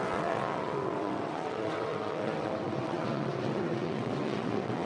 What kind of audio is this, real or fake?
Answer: fake